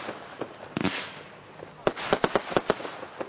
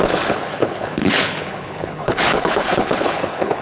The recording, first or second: first